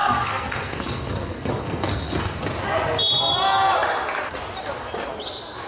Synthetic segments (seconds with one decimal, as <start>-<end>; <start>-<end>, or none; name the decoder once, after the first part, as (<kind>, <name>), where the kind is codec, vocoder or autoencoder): 0.0-2.4 (codec, SNAC)

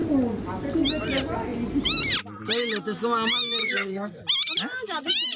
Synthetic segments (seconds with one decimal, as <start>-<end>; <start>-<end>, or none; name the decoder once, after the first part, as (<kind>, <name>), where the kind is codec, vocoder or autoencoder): 3.6-4.2 (codec, SNAC)

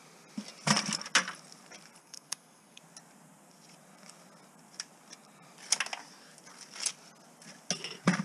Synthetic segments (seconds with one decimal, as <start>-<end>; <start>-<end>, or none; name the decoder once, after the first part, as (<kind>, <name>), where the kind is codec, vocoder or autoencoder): 2.0-2.8 (codec, SNAC)

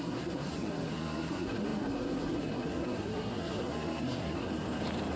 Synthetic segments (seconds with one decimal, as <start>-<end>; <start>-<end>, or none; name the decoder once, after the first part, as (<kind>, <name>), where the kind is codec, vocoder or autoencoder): 0.0-4.5 (codec, SNAC)

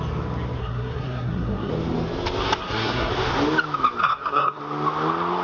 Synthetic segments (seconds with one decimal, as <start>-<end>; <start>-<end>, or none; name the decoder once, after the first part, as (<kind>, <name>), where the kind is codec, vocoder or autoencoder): 0.6-1.7 (codec, SNAC); 2.6-3.1; 4.0-4.6

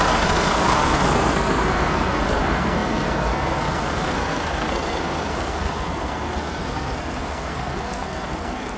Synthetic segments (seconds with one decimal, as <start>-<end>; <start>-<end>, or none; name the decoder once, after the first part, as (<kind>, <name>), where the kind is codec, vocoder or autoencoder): 0.0-8.8 (codec, SNAC)